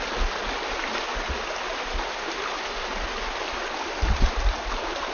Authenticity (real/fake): real